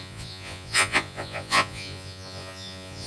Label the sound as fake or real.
fake